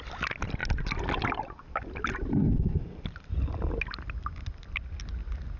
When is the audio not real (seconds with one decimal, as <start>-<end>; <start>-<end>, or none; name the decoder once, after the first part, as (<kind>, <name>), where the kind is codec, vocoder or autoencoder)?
none